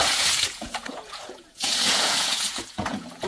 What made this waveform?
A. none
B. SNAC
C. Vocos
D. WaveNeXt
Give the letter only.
C